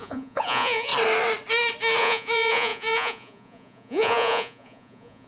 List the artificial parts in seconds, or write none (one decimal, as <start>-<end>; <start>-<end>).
0.0-0.9; 2.0-5.3

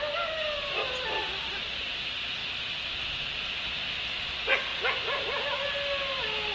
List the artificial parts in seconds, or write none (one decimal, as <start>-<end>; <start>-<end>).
4.7-5.4

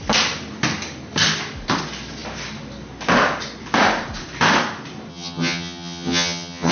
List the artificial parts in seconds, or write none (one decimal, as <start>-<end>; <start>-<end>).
5.1-6.7